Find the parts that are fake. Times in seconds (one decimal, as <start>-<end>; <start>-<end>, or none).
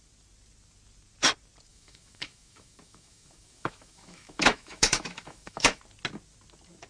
1.7-5.8